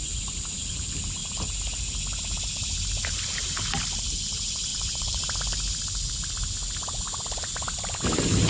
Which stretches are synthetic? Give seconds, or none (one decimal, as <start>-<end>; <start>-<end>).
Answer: 4.7-5.2